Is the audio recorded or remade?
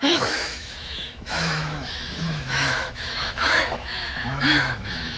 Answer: remade